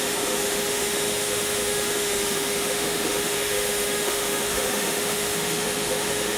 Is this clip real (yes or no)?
no